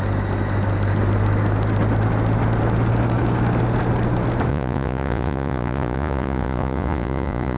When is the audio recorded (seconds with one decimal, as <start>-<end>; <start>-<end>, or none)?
0.0-4.5